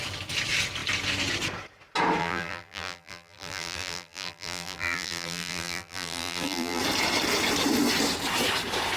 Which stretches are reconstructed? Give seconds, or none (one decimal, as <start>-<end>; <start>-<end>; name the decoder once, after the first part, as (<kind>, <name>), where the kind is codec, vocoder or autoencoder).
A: 2.2-6.8 (vocoder, BigVGAN v2)